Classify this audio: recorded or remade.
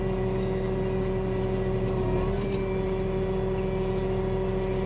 recorded